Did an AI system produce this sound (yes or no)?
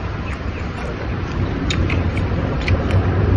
yes